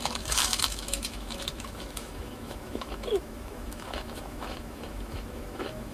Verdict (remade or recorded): remade